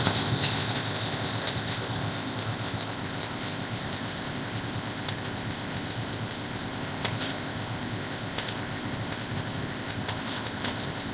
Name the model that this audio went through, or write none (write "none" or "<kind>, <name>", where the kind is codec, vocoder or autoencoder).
codec, ZipCodec